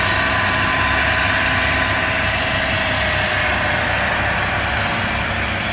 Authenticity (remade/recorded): recorded